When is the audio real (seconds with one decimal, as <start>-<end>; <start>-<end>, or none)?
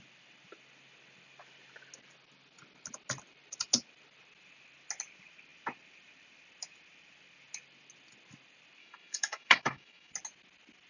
0.0-8.8; 10.1-10.9